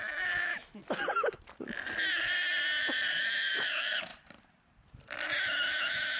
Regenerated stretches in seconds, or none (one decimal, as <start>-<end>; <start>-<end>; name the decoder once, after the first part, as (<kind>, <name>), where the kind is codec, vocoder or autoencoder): 0.0-0.8 (autoencoder, DAC-VAE); 3.1-4.1; 5.4-6.2